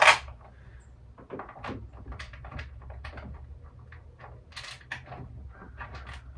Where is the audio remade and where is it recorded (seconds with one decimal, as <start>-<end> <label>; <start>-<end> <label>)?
0.0-2.1 recorded; 2.1-3.1 remade; 3.1-6.4 recorded